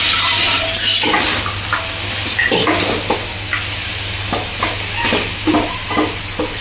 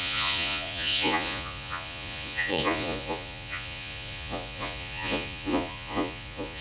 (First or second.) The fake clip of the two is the second